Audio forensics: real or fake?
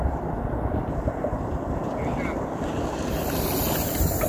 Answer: real